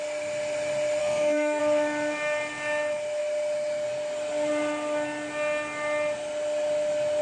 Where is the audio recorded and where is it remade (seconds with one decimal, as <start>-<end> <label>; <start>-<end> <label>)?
0.0-1.0 recorded; 1.0-1.6 remade; 1.6-7.2 recorded